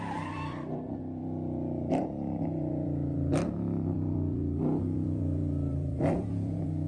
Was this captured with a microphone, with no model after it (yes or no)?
no